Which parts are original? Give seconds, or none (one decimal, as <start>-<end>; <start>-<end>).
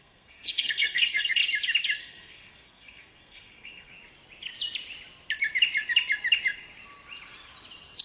1.4-2.0; 3.9-8.0